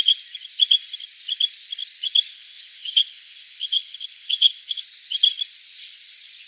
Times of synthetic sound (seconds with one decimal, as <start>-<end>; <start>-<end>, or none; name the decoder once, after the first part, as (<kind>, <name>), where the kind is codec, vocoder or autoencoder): 2.3-4.8 (codec, HILCodec)